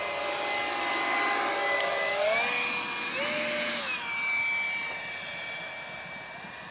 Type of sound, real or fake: real